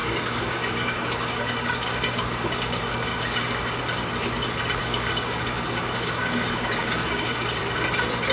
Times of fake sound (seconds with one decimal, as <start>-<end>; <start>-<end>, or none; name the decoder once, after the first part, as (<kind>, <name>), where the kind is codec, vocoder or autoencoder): 0.0-3.8 (codec, DAC); 4.8-7.6